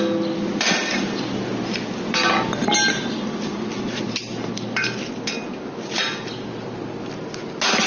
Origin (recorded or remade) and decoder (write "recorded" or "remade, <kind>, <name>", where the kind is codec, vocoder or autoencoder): recorded